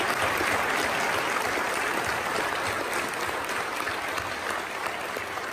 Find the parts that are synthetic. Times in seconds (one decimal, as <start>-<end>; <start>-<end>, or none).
none